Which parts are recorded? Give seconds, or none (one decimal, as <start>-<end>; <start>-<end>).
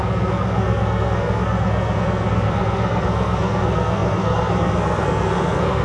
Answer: none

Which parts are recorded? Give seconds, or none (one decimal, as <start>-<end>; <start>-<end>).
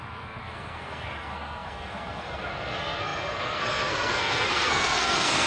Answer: none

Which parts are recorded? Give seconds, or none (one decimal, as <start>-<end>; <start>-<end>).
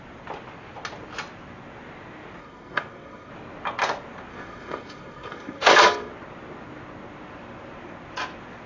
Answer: 0.0-2.4; 3.3-4.3; 6.1-8.7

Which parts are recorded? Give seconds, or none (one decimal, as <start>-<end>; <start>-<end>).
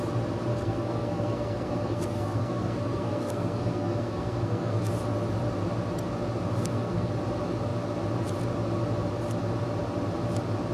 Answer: 0.0-0.5; 4.9-6.5; 7.1-10.7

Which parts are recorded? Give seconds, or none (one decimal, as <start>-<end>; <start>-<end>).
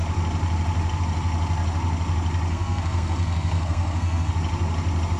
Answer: 0.0-2.5; 4.3-5.2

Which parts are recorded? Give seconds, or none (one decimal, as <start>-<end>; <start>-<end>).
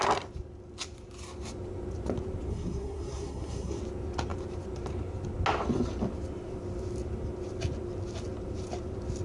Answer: 0.0-2.5; 3.8-9.2